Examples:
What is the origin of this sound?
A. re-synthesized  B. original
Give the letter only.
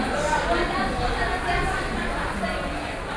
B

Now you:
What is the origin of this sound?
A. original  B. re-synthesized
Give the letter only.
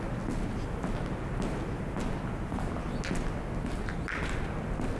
A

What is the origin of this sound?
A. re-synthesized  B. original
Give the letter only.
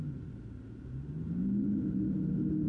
B